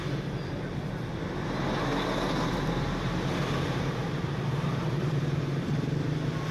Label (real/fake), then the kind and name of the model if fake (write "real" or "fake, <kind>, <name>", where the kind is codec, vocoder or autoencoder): real